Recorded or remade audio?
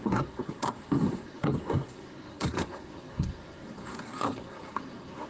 remade